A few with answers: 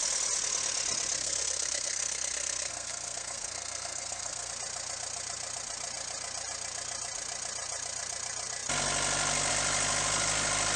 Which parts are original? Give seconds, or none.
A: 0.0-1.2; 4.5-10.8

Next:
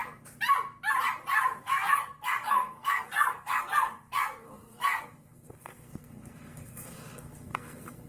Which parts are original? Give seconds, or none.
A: 0.0-1.6